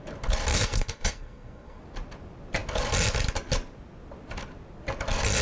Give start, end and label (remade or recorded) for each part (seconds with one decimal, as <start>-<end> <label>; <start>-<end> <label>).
0.0-0.5 recorded; 0.5-1.8 remade; 1.8-5.4 recorded